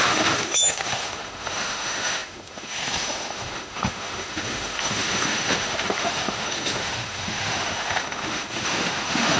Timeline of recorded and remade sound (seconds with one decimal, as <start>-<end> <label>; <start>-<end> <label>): 0.0-9.4 remade